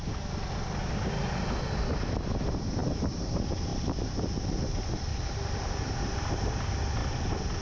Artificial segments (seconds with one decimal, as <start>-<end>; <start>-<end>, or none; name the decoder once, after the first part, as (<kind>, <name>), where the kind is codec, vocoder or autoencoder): 2.8-3.3 (vocoder, BigVGAN v2); 3.7-4.6; 5.1-6.2